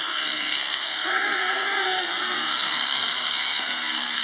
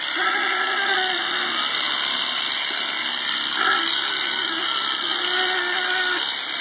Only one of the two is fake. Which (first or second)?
first